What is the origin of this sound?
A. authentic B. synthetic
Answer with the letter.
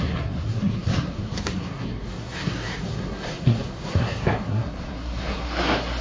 B